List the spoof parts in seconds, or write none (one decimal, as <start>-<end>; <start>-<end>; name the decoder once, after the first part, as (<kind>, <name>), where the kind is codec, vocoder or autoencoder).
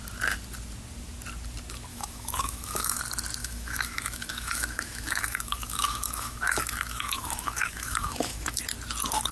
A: 1.9-3.0 (autoencoder, DAC-VAE); 3.4-8.6